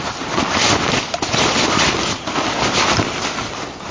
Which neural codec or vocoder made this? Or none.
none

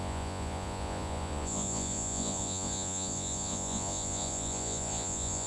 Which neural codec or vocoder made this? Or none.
vocoder, Vocos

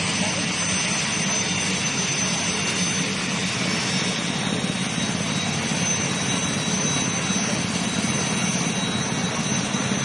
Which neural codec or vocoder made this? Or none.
none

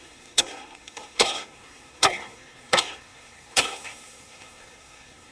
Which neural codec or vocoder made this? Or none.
codec, SNAC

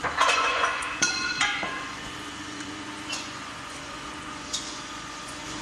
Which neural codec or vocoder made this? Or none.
vocoder, Vocos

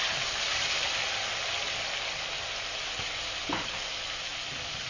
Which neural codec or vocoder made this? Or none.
none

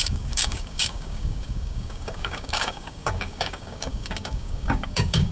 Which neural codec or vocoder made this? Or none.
codec, DAC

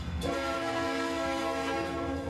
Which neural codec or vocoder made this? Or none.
codec, SNAC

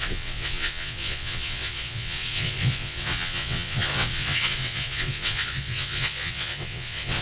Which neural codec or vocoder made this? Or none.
vocoder, WaveNeXt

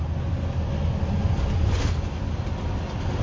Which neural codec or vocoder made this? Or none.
none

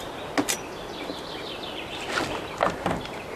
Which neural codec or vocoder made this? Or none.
none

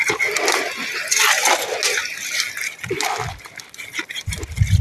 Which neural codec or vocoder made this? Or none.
none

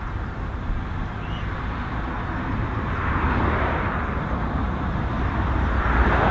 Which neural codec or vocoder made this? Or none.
none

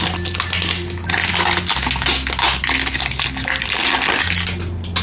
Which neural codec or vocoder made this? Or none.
none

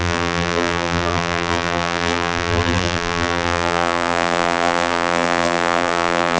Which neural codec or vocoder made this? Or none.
vocoder, BigVGAN v2